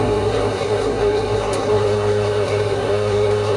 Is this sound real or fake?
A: fake